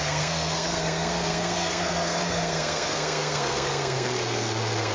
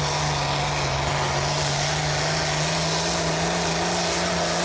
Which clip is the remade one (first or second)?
first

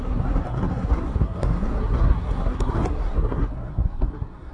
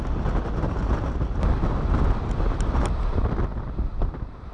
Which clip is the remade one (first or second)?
first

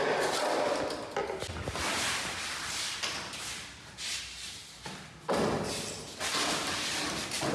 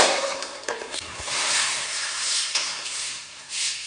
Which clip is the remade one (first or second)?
second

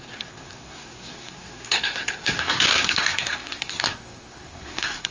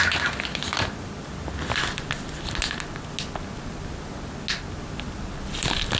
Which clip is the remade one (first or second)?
first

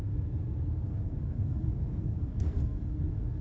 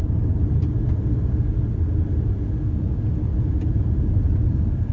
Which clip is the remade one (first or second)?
first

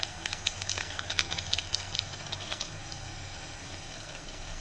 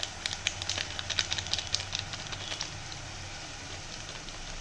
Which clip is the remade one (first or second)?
first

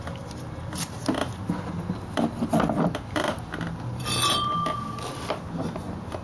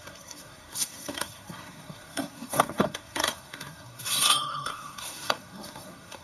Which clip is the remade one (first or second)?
second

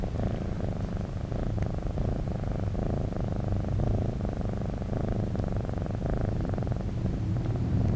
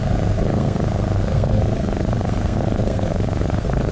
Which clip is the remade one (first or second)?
second